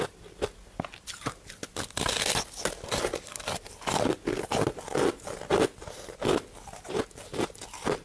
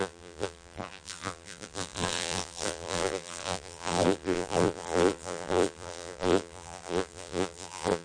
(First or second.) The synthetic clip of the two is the second